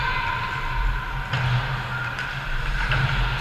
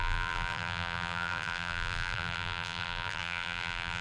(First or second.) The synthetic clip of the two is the second